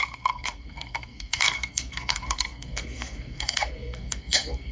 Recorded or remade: remade